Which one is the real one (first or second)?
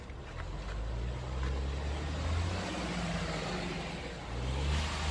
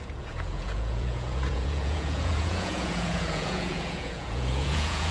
first